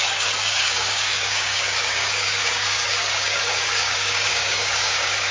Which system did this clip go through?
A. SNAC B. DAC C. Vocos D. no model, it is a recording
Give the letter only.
B